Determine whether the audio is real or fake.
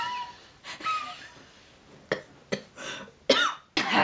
real